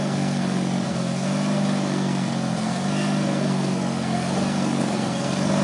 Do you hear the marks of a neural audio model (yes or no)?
yes